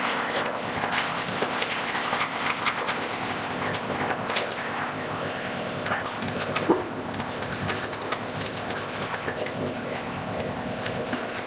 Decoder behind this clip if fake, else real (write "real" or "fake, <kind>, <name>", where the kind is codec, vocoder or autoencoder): fake, codec, ZipCodec